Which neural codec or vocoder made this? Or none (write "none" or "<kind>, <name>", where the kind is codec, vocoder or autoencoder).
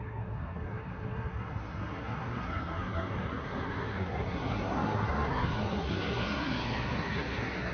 codec, SNAC